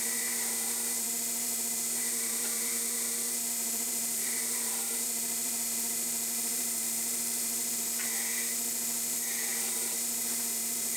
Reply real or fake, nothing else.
fake